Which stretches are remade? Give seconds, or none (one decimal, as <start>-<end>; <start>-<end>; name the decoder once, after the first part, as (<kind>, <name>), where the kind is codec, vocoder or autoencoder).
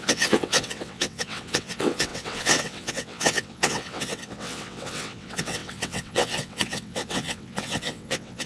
0.0-8.5 (vocoder, WaveNeXt)